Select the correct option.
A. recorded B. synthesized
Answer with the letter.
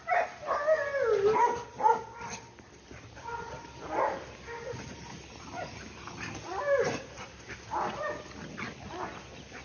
A